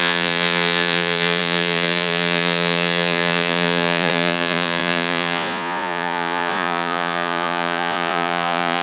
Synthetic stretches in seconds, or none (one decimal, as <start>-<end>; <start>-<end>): 0.0-8.8